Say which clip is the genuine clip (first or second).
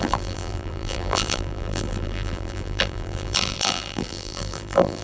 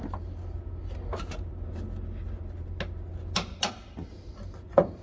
second